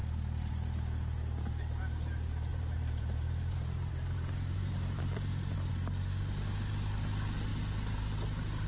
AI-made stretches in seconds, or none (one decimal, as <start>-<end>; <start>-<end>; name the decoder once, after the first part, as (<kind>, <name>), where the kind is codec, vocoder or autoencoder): 2.5-5.7 (vocoder, BigVGAN v2)